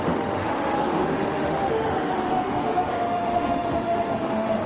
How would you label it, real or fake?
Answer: fake